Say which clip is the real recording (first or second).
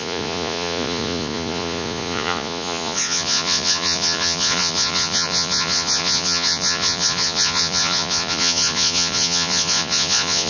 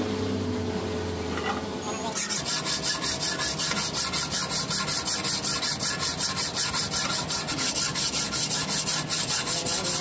second